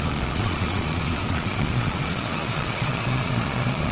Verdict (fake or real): fake